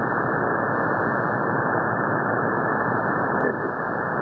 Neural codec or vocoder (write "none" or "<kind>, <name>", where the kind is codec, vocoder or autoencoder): none